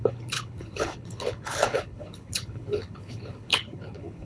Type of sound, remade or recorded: remade